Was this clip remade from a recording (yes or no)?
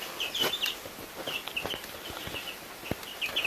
no